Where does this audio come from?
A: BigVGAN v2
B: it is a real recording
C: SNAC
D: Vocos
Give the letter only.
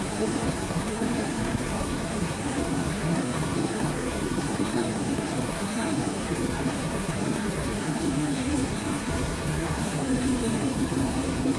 C